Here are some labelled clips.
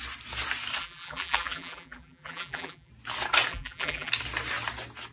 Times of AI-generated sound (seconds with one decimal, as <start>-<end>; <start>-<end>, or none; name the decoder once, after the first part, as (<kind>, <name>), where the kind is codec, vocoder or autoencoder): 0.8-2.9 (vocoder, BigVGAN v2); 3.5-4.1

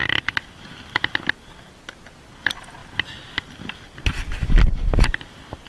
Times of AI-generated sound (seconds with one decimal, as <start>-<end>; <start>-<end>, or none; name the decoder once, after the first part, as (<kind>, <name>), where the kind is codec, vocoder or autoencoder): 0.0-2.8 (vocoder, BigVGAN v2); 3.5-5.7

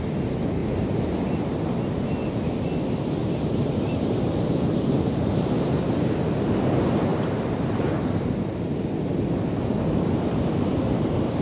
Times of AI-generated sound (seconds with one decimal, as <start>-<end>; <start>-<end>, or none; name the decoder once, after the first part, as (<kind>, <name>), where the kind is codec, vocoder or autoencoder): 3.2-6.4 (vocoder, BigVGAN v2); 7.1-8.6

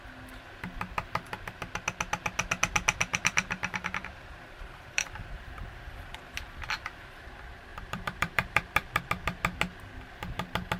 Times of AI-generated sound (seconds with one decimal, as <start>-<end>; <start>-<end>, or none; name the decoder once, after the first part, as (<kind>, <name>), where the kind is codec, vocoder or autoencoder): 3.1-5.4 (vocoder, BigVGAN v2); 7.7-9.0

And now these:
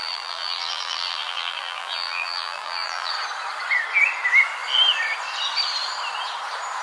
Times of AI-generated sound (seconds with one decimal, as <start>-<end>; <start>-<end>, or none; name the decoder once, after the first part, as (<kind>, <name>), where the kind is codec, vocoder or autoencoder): 0.0-3.1 (vocoder, BigVGAN v2)

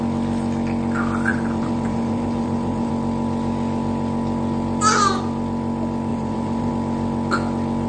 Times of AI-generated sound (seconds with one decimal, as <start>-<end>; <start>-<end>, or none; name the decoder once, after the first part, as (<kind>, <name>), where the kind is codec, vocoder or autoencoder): 1.3-2.9 (vocoder, BigVGAN v2); 6.1-6.7

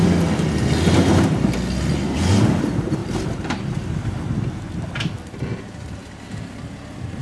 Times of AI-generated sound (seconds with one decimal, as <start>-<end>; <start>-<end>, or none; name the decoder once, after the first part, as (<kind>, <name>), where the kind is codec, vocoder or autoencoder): 3.0-3.6 (vocoder, BigVGAN v2)

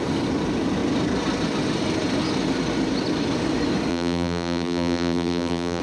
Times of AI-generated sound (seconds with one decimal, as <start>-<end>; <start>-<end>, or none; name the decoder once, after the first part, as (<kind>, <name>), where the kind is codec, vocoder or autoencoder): 3.9-5.8 (vocoder, BigVGAN v2)